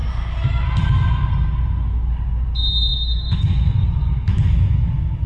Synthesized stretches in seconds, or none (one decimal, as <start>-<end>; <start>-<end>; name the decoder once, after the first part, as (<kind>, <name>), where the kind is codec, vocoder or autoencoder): 2.9-5.3 (autoencoder, DAC-VAE)

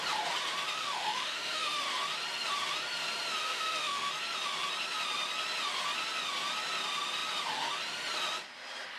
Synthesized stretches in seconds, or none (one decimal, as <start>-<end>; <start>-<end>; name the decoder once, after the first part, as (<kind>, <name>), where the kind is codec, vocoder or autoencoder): 0.8-1.8 (autoencoder, DAC-VAE); 3.4-4.1

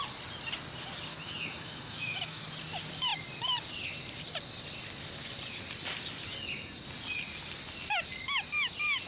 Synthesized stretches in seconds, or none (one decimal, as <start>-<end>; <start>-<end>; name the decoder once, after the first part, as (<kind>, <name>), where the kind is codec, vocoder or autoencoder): 1.1-2.4 (autoencoder, DAC-VAE)

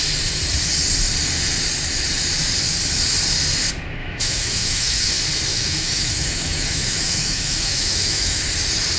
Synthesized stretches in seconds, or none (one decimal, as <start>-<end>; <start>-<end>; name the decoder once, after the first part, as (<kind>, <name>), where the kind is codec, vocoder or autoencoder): 4.0-5.1 (autoencoder, DAC-VAE); 5.5-8.4

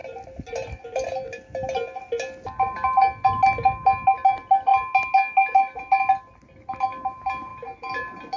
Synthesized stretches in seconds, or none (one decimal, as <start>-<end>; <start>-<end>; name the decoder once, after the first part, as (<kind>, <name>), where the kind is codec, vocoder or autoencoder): none

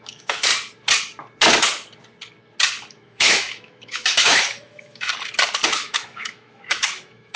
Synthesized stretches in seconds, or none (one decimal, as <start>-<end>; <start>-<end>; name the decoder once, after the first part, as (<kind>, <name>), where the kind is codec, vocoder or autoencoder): 0.0-0.5 (autoencoder, DAC-VAE); 2.9-5.1; 5.7-7.4

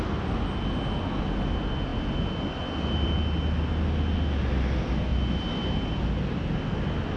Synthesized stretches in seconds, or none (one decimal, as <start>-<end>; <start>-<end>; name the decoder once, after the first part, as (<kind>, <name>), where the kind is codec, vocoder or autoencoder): none

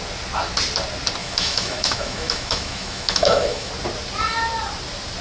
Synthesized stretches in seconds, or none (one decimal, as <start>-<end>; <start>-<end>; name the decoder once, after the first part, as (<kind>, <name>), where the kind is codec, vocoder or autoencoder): 1.2-3.7 (autoencoder, DAC-VAE)